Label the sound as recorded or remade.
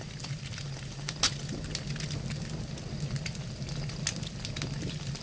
recorded